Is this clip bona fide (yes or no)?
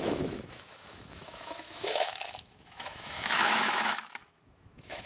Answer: no